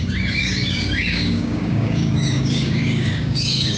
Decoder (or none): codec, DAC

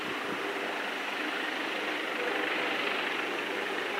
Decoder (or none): none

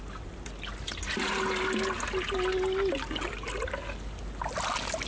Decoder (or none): none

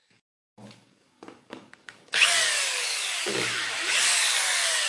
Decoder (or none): codec, DAC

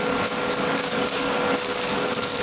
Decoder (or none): codec, DAC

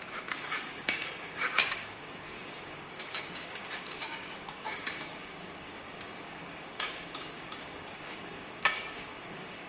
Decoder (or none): codec, DAC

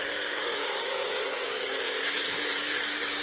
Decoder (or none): codec, DAC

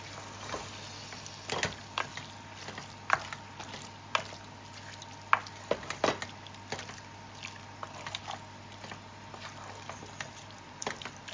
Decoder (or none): none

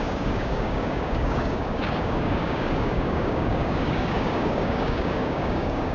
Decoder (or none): codec, DAC